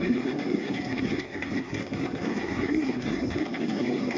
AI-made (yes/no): yes